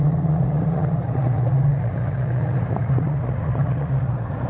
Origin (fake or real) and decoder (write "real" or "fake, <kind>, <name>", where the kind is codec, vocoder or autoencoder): fake, vocoder, Vocos